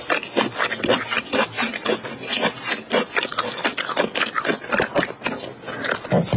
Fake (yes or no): no